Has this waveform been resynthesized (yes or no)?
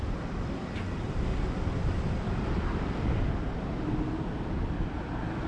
no